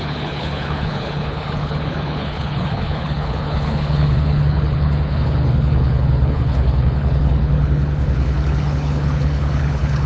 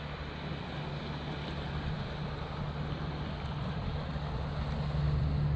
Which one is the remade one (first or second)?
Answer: first